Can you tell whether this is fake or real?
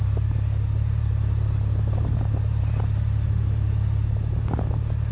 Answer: real